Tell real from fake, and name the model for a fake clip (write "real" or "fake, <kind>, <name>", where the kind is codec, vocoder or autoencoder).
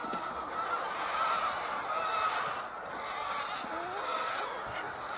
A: real